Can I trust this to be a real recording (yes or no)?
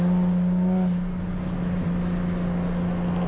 yes